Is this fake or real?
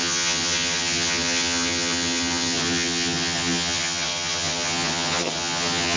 fake